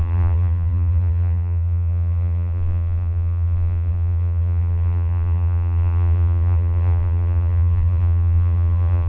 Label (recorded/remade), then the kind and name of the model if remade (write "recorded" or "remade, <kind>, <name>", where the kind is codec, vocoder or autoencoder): remade, vocoder, BigVGAN v2